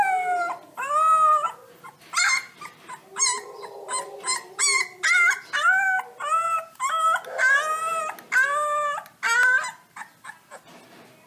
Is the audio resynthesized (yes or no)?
no